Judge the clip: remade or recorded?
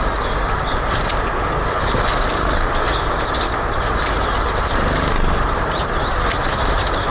recorded